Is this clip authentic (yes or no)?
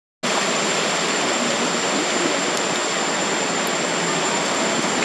yes